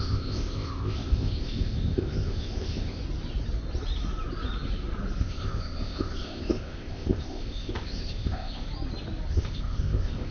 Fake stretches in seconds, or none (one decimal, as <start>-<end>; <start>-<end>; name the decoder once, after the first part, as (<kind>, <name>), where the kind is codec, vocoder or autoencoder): 0.0-3.0 (codec, ZipCodec); 5.2-8.7; 9.3-10.3